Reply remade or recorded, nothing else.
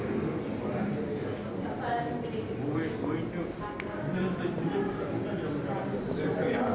recorded